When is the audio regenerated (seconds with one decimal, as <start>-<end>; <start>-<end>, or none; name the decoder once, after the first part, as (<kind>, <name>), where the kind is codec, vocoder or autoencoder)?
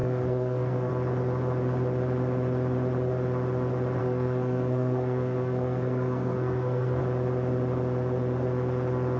0.0-0.9 (codec, SNAC); 4.0-7.0